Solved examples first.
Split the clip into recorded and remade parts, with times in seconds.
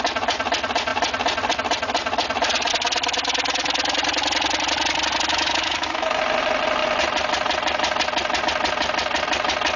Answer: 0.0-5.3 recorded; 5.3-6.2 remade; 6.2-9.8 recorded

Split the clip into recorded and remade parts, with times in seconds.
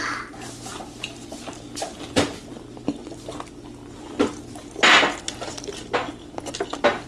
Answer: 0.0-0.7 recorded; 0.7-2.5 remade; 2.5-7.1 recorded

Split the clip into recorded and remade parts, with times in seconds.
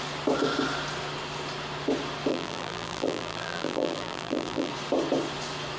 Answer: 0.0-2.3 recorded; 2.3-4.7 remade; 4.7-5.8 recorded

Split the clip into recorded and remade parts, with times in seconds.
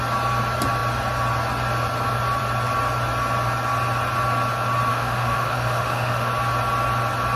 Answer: 0.0-4.9 recorded; 4.9-6.3 remade; 6.3-7.4 recorded